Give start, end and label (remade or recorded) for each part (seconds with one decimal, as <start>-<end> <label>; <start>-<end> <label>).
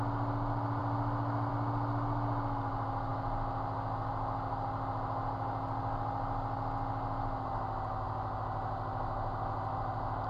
0.0-10.3 recorded